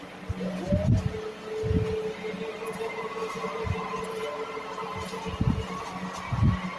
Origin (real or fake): real